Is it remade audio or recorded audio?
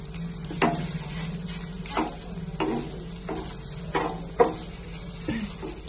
recorded